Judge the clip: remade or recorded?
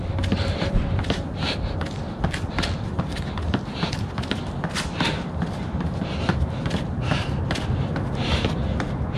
remade